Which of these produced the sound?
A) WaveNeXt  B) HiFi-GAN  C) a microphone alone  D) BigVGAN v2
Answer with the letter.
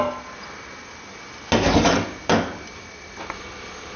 C